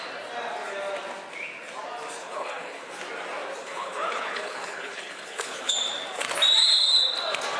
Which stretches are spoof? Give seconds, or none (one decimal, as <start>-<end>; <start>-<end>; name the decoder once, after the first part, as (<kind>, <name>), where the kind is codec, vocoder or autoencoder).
2.2-2.9 (codec, HILCodec); 3.6-5.7